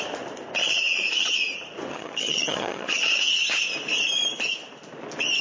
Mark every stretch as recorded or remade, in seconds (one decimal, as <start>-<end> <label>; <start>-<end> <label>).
0.0-0.6 recorded; 0.6-1.5 remade; 1.5-1.9 recorded; 1.9-3.3 remade; 3.3-5.4 recorded